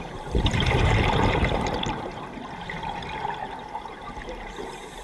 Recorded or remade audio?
remade